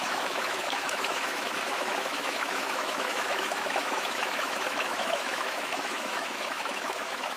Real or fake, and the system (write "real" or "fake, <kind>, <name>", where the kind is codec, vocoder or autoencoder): fake, autoencoder, DAC-VAE